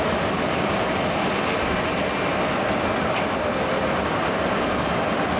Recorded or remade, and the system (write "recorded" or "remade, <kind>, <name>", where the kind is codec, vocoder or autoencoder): recorded